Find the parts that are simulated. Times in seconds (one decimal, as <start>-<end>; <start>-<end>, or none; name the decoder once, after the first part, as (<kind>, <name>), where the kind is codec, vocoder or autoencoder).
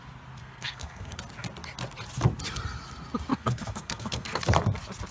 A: 0.4-1.2 (codec, SNAC); 3.3-4.4